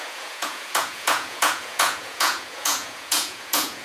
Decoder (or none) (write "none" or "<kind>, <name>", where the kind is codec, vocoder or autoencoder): vocoder, Vocos